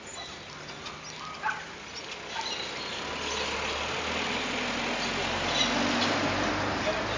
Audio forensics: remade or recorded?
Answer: recorded